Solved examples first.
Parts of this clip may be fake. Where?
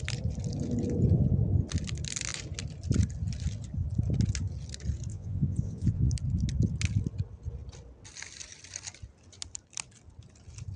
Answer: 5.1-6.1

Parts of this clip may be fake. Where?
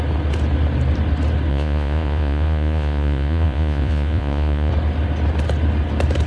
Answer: 1.5-4.7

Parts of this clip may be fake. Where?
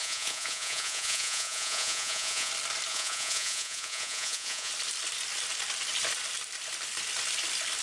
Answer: 0.0-2.5; 2.9-4.7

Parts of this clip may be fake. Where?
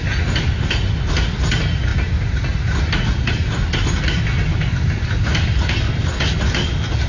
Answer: none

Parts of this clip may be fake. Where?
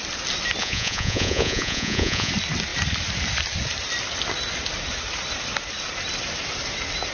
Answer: 0.6-2.3